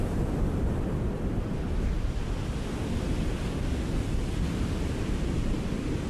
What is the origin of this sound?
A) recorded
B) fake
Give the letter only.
A